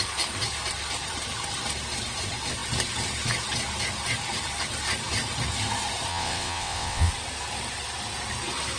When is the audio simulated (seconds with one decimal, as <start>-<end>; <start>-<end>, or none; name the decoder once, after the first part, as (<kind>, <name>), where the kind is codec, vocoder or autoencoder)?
6.1-7.1 (vocoder, WaveNeXt)